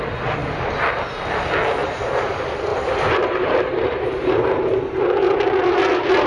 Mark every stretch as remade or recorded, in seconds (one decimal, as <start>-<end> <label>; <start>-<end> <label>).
0.0-1.8 recorded; 1.8-2.3 remade; 2.3-2.7 recorded; 2.7-5.0 remade; 5.0-6.3 recorded